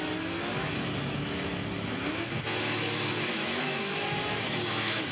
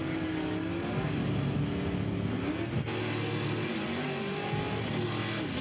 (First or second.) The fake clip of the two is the first